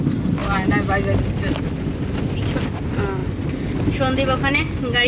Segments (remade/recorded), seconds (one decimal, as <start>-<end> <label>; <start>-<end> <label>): 0.0-5.1 recorded